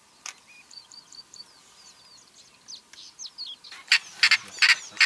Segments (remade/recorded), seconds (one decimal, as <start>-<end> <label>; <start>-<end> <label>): 0.0-5.1 recorded